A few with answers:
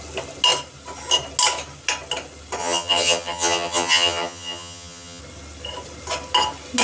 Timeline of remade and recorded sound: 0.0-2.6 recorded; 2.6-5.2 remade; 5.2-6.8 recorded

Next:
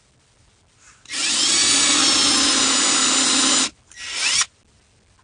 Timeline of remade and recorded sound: 0.0-5.2 recorded